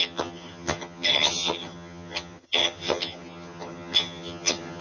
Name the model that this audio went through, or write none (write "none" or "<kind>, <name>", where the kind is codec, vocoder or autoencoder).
vocoder, HiFi-GAN